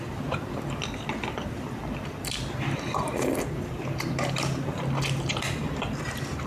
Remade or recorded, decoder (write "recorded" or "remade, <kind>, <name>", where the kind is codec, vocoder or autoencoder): remade, vocoder, BigVGAN v2